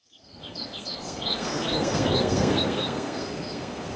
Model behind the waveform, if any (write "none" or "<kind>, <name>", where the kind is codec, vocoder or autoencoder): codec, SNAC